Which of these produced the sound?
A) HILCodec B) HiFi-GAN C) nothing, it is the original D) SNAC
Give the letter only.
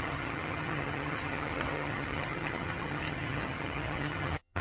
B